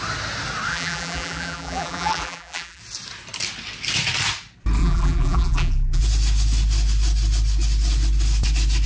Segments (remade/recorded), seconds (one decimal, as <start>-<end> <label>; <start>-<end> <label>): 0.0-0.7 recorded; 0.7-2.8 remade; 2.8-4.8 recorded; 4.8-6.0 remade; 6.0-8.9 recorded